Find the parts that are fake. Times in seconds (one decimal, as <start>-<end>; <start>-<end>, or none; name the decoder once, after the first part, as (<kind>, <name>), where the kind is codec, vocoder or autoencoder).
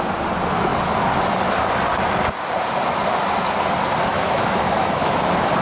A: 4.1-5.1 (autoencoder, DAC-VAE)